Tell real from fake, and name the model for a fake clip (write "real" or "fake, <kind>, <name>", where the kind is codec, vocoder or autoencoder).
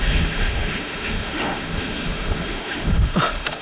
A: fake, autoencoder, DAC-VAE